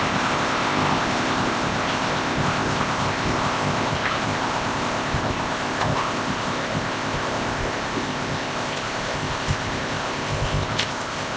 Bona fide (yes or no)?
no